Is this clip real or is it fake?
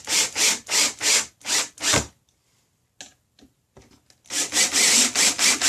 real